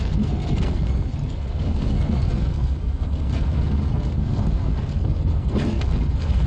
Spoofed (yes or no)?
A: yes